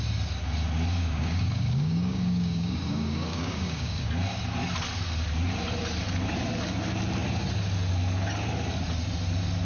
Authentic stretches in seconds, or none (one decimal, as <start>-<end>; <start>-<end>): 0.0-0.9; 4.1-9.7